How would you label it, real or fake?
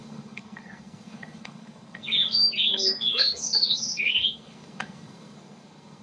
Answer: fake